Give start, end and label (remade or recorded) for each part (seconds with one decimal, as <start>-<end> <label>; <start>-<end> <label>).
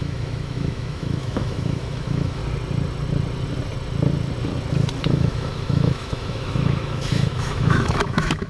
0.0-2.4 remade; 2.4-5.0 recorded; 5.0-8.5 remade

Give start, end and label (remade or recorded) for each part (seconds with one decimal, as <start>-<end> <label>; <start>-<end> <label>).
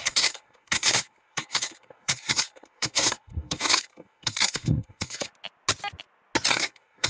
0.0-5.3 remade; 5.3-6.5 recorded; 6.5-7.1 remade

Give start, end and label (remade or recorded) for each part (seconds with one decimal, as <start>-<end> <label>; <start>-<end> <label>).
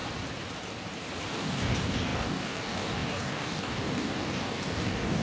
0.0-1.3 recorded; 1.3-5.2 remade